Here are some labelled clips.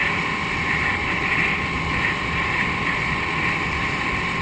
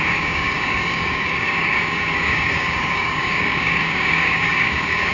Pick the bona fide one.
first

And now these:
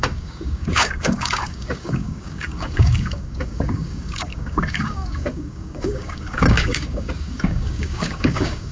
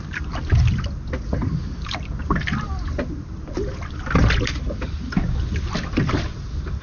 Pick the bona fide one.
second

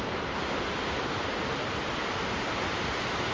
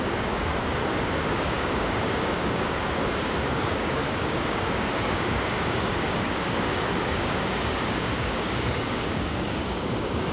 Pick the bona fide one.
first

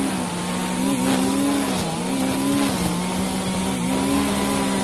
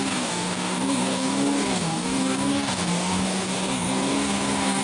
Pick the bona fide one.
first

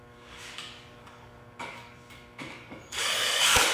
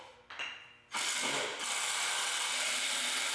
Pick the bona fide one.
second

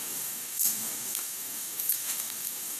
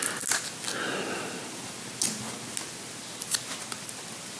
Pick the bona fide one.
second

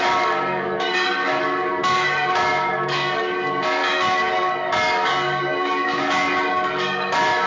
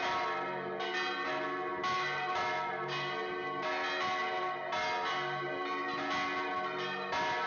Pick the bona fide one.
second